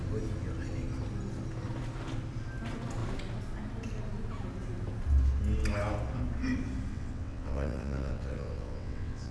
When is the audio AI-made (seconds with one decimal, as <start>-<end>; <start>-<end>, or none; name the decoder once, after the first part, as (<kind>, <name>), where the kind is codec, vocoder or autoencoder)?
6.9-9.3 (vocoder, WaveNeXt)